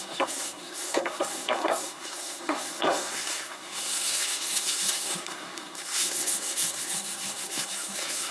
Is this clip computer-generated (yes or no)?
yes